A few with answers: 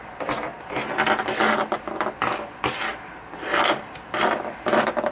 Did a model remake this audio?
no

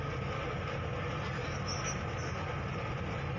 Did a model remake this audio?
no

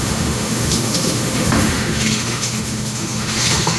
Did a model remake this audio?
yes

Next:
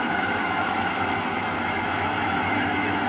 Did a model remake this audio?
yes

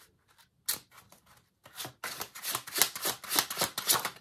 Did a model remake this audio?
no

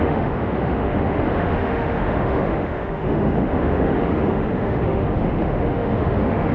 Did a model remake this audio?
yes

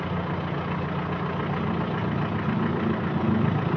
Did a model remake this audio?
no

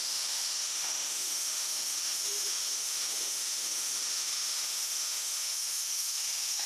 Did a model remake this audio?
yes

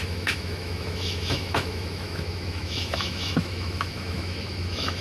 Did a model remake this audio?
yes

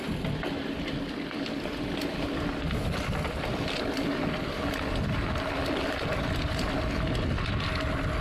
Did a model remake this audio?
no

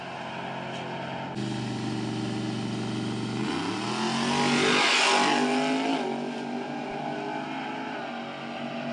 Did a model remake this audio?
no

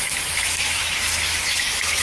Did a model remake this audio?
yes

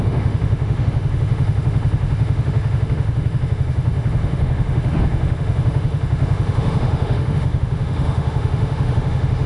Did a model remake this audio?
yes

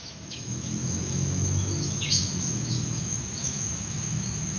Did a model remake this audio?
yes